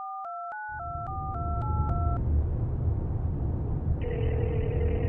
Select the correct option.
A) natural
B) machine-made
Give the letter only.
A